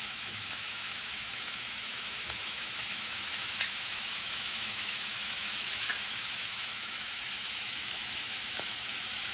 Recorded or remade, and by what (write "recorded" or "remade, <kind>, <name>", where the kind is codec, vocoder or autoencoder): remade, autoencoder, DAC-VAE